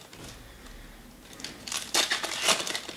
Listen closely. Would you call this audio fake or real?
real